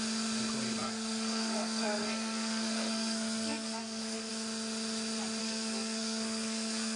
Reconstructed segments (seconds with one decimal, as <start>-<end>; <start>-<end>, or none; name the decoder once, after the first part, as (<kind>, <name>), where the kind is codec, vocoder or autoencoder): 0.8-4.3 (codec, SNAC); 5.4-7.0